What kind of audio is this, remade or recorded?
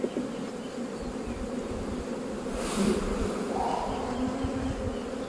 recorded